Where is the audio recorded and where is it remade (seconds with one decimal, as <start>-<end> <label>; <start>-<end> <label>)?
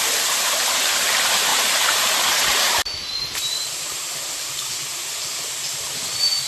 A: 0.0-1.5 recorded; 1.5-2.9 remade; 2.9-6.5 recorded